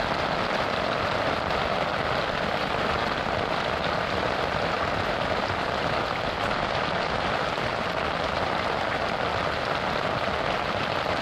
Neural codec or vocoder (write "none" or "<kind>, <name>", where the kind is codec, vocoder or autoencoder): none